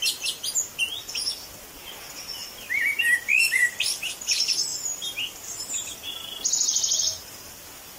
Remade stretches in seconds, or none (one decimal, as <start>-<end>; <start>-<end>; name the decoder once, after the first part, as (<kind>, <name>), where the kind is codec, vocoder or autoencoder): none